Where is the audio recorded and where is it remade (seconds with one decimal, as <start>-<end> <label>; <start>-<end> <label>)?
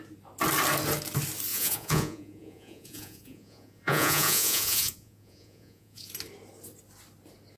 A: 0.0-1.5 recorded; 1.5-6.1 remade; 6.1-7.6 recorded